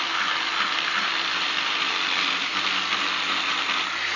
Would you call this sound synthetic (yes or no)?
no